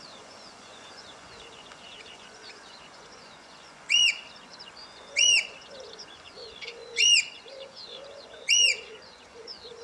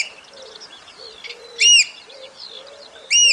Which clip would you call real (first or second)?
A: second